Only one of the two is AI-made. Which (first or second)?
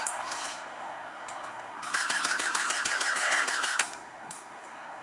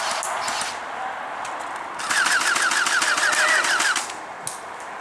first